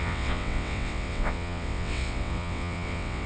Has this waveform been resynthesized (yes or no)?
yes